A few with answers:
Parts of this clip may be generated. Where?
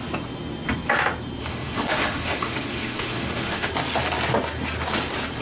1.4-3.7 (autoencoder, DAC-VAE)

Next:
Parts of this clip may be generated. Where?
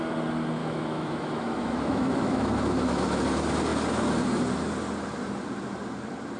0.6-3.2 (autoencoder, DAC-VAE)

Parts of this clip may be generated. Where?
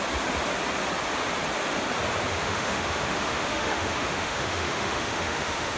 2.3-5.8 (autoencoder, DAC-VAE)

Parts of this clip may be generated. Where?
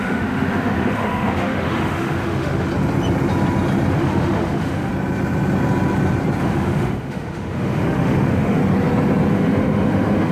0.0-2.7 (autoencoder, DAC-VAE); 3.9-4.9; 6.4-8.6; 9.3-10.3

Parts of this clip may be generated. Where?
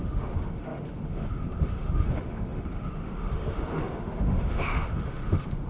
0.0-5.7 (autoencoder, DAC-VAE)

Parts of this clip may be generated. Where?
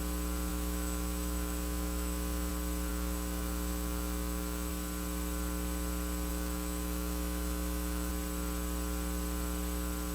0.5-2.5 (autoencoder, DAC-VAE); 2.9-4.7; 6.3-8.1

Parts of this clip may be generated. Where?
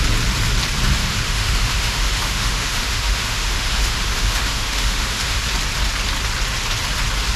1.0-5.4 (autoencoder, DAC-VAE)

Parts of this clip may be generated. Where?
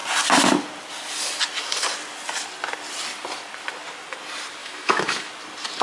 4.6-5.3 (autoencoder, DAC-VAE)